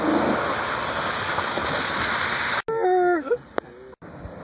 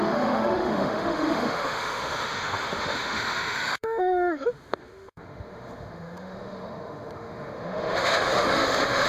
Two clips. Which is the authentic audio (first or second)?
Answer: first